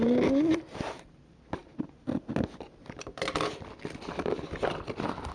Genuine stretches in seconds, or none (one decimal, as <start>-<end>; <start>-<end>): 0.0-5.3